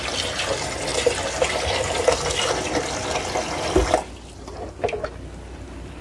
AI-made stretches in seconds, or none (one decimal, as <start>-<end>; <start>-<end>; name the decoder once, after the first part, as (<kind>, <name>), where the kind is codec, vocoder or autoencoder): none